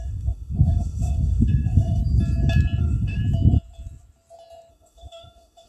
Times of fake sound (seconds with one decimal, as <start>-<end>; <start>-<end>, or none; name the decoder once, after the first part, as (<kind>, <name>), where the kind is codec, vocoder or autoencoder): 0.0-2.0 (autoencoder, DAC-VAE); 2.8-3.2; 4.7-5.7